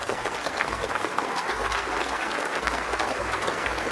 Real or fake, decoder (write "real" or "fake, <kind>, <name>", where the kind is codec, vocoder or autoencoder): fake, codec, SNAC